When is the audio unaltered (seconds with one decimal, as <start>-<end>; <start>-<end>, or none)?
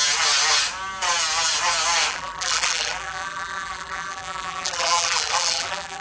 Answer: 0.0-2.1